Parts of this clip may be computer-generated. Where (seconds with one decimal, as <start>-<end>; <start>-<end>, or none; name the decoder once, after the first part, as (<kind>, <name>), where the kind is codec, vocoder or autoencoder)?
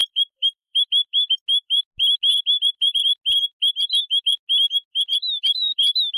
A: 0.0-1.3 (vocoder, BigVGAN v2); 2.3-2.9; 5.1-5.8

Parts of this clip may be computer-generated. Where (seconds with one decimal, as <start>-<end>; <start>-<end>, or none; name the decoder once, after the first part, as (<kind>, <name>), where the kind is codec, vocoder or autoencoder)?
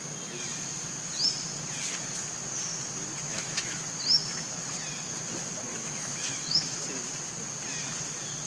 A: 3.3-3.8 (autoencoder, DAC-VAE); 5.7-6.8